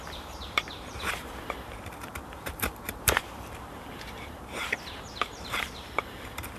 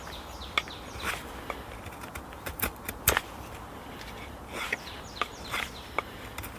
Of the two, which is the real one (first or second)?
second